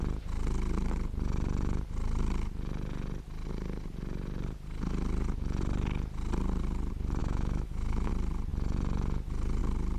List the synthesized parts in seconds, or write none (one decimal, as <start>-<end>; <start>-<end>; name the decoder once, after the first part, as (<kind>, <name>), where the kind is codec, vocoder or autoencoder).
7.2-8.1 (autoencoder, DAC-VAE)